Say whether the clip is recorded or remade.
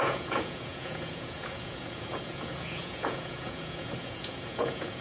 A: remade